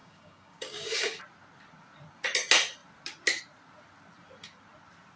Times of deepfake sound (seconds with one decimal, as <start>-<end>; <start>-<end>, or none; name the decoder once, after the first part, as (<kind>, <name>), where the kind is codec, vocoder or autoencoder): 0.0-1.2 (codec, DAC)